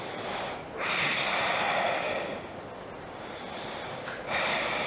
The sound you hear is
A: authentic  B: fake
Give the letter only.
B